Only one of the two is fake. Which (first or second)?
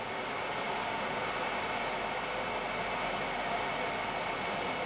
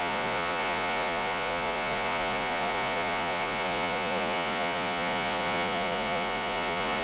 second